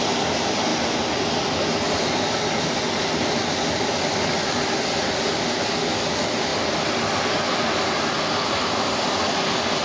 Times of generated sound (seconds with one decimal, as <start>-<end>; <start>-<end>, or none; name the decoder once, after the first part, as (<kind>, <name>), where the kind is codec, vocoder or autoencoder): none